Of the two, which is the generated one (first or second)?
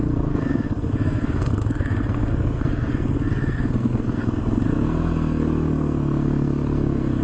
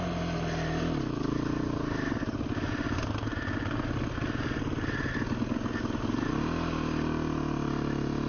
first